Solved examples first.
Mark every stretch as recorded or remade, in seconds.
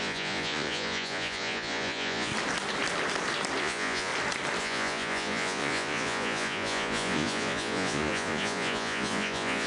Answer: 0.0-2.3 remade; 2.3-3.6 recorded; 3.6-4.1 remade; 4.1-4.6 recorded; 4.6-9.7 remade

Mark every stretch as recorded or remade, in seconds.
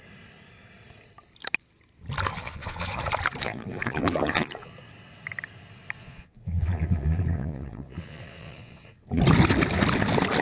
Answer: 0.0-2.3 recorded; 2.3-3.0 remade; 3.0-3.4 recorded; 3.4-4.7 remade; 4.7-6.0 recorded; 6.0-9.2 remade; 9.2-10.4 recorded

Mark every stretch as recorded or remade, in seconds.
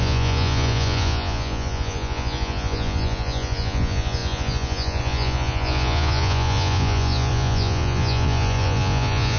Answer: 0.0-9.4 remade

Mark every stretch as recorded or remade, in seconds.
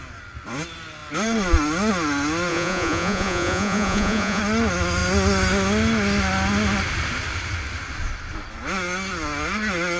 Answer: 0.0-2.5 recorded; 2.5-4.4 remade; 4.4-10.0 recorded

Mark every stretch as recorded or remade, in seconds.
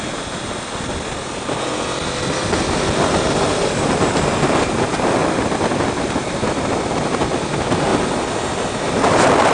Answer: 0.0-9.5 recorded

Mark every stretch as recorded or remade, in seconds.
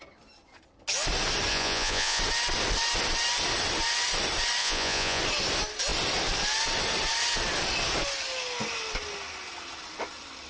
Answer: 0.0-1.5 recorded; 1.5-2.2 remade; 2.2-4.6 recorded; 4.6-5.2 remade; 5.2-10.5 recorded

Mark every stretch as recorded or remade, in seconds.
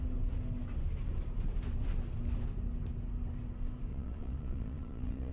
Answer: 0.0-3.9 recorded; 3.9-5.3 remade